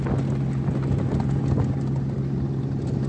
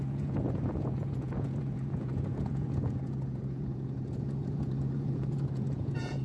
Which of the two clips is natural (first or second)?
first